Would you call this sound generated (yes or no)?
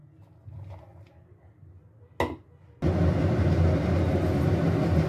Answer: no